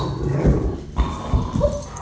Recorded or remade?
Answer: recorded